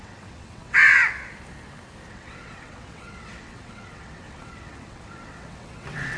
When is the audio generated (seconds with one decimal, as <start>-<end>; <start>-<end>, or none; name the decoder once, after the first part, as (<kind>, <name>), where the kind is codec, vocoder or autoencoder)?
0.0-0.9 (vocoder, WaveNeXt); 2.1-6.2